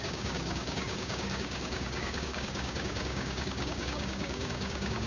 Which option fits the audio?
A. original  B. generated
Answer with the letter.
B